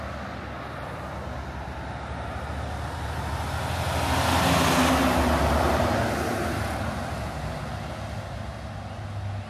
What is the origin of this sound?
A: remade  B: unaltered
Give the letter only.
B